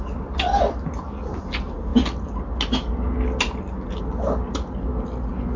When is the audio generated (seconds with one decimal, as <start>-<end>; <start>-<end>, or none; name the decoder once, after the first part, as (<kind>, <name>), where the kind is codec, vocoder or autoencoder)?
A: none